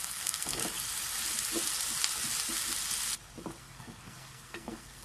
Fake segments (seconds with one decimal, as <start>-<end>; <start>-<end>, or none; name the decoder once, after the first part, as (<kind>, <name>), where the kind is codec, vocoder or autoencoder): 0.0-0.6 (codec, SNAC); 3.6-5.0